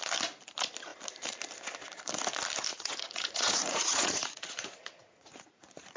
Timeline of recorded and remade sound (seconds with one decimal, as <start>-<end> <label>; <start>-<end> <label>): 0.0-2.7 recorded; 2.7-6.0 remade